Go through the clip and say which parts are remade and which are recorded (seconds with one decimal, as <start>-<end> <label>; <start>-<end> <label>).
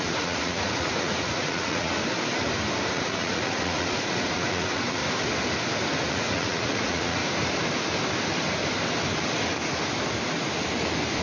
0.0-1.9 remade; 1.9-2.9 recorded; 2.9-5.0 remade; 5.0-6.1 recorded; 6.1-7.2 remade; 7.2-11.2 recorded